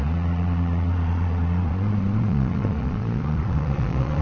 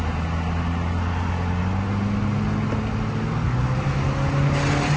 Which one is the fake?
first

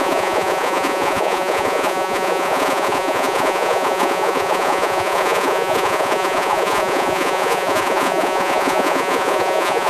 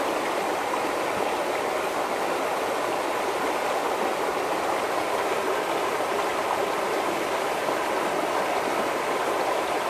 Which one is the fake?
first